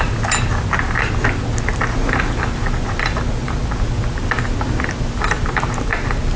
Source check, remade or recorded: recorded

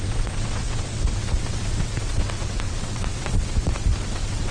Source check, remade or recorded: remade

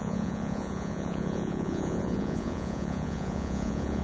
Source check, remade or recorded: remade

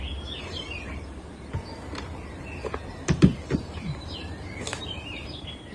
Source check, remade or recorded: remade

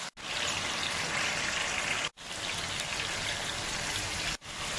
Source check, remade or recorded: recorded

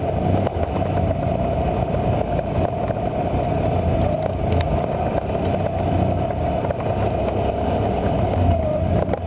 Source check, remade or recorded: recorded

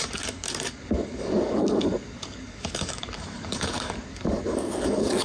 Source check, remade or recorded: remade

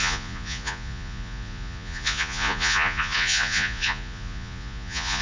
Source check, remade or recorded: remade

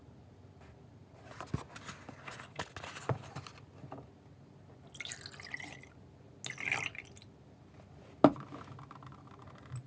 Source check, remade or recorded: recorded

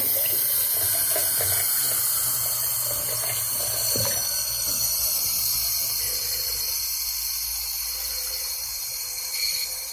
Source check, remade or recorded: recorded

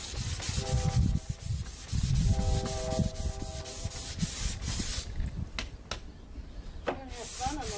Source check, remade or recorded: recorded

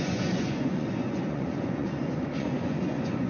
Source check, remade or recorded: remade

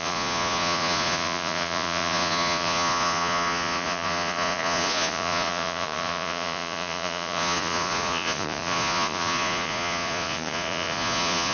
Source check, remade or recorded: remade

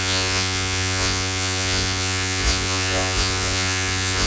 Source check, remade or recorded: remade